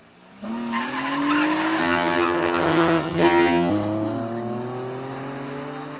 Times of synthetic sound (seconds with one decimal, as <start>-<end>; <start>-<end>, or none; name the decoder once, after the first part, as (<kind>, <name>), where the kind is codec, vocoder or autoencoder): 1.8-3.7 (vocoder, HiFi-GAN)